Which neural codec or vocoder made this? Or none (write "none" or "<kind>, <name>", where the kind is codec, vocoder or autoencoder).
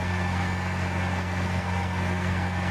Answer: codec, SNAC